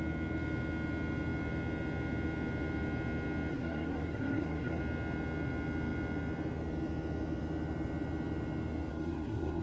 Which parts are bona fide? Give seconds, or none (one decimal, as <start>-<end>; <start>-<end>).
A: 0.0-3.5; 4.8-8.9